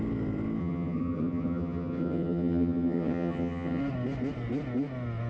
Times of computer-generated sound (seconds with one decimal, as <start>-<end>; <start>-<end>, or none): 0.6-3.8